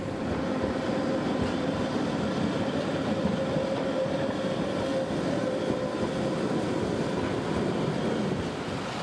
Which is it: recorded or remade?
recorded